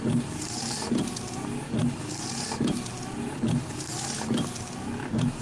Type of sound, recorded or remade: recorded